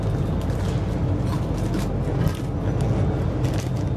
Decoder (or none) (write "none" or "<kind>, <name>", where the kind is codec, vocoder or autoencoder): none